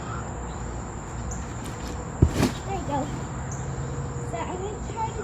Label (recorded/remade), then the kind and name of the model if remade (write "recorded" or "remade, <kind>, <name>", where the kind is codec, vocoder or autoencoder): recorded